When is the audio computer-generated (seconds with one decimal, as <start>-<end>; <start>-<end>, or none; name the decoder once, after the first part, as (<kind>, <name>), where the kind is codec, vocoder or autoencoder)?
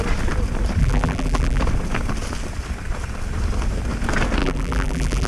0.8-1.6 (vocoder, BigVGAN v2); 4.4-5.3